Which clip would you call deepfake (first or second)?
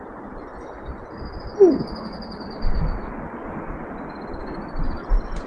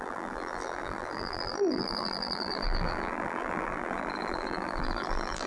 second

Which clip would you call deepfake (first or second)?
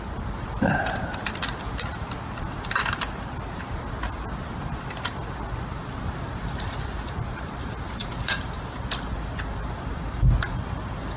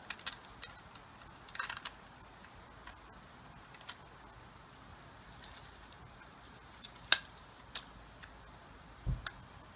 first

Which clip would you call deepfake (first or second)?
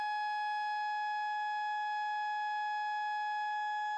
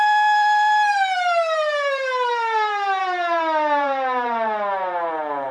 second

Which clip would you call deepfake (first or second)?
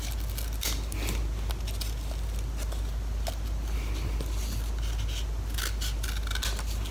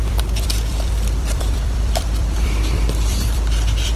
second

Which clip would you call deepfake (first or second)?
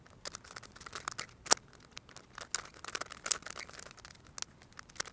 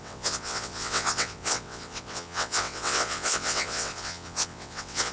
second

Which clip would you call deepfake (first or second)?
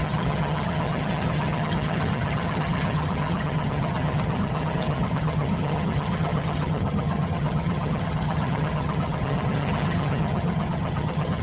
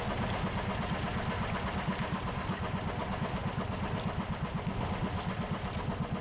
first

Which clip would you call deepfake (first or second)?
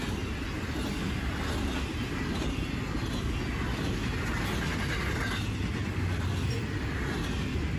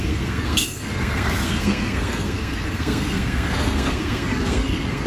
second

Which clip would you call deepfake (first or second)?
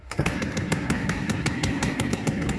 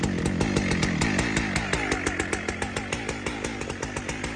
first